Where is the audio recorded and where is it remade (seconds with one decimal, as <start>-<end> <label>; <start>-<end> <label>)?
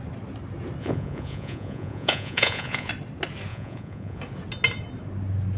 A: 0.0-0.8 recorded; 0.8-2.9 remade; 2.9-3.5 recorded; 3.5-4.2 remade; 4.2-5.6 recorded